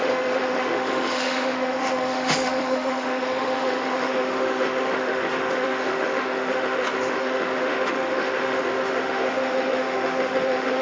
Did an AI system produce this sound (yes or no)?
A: yes